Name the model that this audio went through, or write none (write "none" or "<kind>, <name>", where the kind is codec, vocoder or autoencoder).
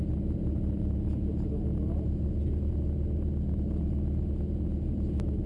none